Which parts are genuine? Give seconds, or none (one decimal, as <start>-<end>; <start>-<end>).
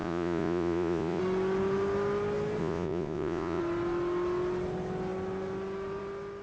1.2-2.6; 3.6-6.4